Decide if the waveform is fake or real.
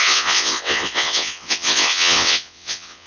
fake